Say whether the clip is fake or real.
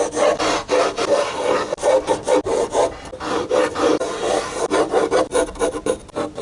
real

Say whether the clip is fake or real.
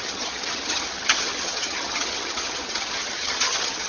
fake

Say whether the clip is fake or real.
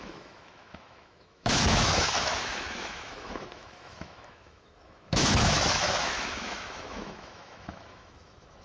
fake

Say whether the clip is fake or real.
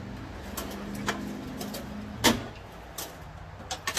real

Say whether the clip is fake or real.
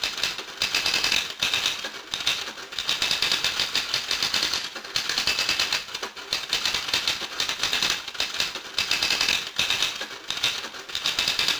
real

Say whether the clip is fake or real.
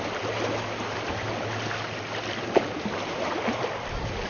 real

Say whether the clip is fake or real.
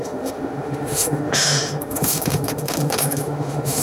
fake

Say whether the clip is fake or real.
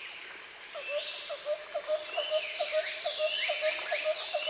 real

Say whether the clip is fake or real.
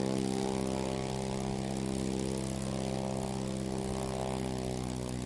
real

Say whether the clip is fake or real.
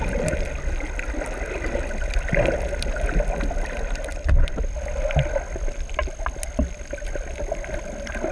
real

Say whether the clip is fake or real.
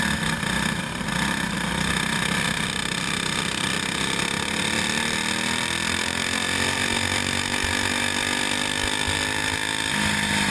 real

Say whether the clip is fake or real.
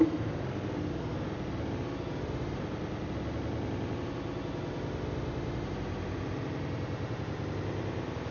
real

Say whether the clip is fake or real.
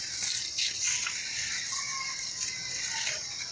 real